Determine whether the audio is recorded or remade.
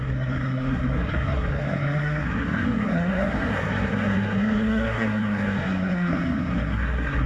remade